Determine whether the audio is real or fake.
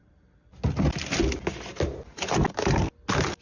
real